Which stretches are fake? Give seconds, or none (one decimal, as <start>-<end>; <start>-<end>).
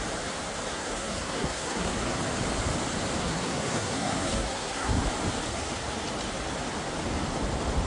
0.7-2.2; 3.2-5.0